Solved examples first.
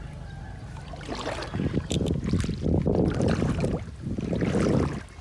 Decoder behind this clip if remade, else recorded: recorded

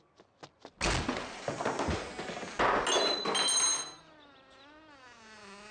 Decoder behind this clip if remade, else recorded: recorded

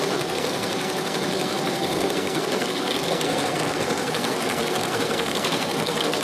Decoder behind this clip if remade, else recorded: remade, codec, SNAC